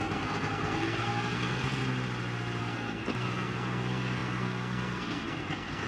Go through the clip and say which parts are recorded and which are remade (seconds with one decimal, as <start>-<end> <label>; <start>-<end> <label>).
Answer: 0.0-1.8 remade; 1.8-2.6 recorded; 2.6-5.9 remade